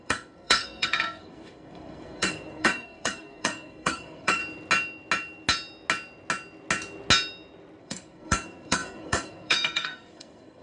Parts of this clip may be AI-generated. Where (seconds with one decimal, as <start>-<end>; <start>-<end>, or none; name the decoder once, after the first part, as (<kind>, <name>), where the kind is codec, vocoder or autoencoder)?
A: 0.0-4.4 (codec, SNAC); 7.8-10.6